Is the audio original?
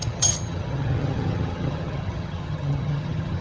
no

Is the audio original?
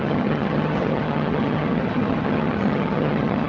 no